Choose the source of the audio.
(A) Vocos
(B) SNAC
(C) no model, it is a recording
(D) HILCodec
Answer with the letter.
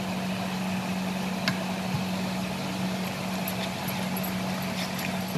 C